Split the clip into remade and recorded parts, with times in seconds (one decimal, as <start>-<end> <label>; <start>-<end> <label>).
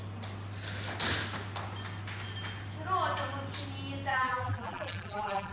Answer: 0.0-4.1 recorded; 4.1-5.5 remade